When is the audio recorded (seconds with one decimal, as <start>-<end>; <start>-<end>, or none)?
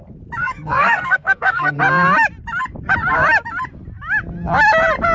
0.0-0.4; 1.8-5.1